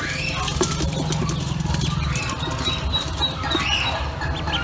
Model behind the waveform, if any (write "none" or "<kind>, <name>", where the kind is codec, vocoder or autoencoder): none